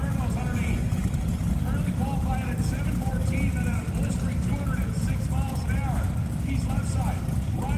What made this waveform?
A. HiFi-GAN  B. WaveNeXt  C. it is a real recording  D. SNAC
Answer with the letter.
C